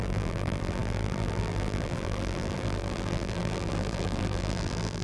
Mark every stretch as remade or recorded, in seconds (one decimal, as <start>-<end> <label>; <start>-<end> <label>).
0.0-5.0 remade